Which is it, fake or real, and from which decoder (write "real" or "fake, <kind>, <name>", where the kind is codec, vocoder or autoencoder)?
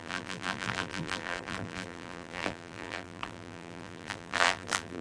fake, vocoder, BigVGAN v2